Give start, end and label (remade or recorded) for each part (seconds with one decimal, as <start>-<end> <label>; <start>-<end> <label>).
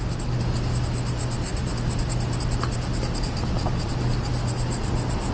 0.0-5.3 recorded